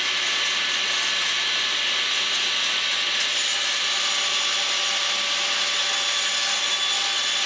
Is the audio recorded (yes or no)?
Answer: yes